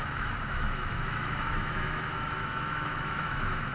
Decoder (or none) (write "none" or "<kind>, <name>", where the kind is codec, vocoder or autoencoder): autoencoder, DAC-VAE